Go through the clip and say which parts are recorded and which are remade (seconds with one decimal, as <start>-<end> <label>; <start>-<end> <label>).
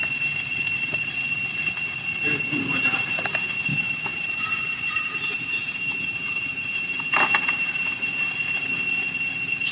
0.0-3.7 recorded; 3.7-8.3 remade; 8.3-9.7 recorded